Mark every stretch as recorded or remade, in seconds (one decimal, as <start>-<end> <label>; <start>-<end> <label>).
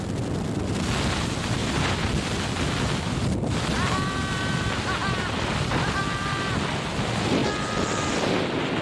0.0-8.8 recorded